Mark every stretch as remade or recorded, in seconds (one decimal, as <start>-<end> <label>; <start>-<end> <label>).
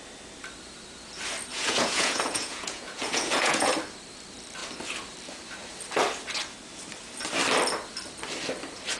0.0-1.5 recorded; 1.5-3.7 remade; 3.7-9.0 recorded